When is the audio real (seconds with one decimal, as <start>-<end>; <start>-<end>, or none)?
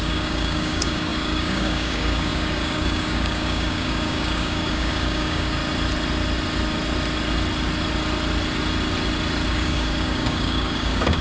5.6-9.5